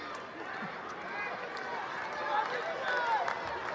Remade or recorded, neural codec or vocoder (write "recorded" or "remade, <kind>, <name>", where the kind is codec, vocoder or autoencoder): recorded